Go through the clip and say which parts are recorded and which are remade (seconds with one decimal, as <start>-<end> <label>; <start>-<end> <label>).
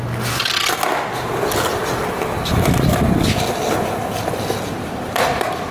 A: 0.0-5.7 recorded